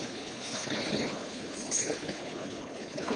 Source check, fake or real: fake